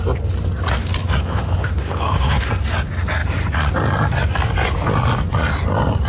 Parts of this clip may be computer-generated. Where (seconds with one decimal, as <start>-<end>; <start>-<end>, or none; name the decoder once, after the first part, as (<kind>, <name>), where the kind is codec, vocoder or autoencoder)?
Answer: 1.2-2.5 (autoencoder, DAC-VAE)